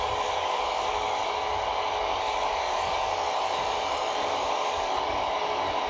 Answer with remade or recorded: remade